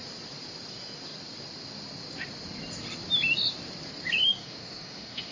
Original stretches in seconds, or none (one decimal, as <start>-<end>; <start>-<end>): 0.0-4.3

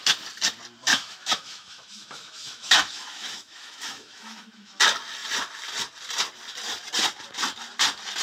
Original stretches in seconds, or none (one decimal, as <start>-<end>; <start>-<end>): 0.0-0.9; 4.8-8.2

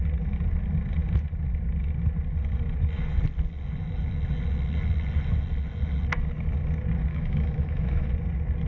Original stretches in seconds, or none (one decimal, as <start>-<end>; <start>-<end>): 0.0-7.1; 8.1-8.7

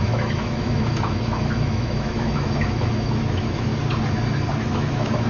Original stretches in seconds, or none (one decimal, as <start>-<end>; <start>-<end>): 3.7-4.6

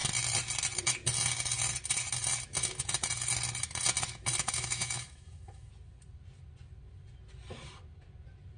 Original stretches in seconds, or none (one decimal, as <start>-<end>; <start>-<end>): 0.0-4.4; 5.7-8.6

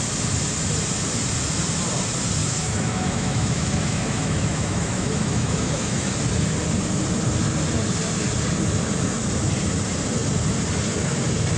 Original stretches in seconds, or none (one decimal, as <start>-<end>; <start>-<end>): 0.0-2.4; 6.1-11.6